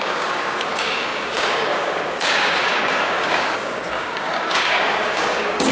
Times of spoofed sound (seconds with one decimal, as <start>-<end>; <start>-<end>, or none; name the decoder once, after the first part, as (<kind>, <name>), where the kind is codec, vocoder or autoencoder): 0.0-5.7 (codec, DAC)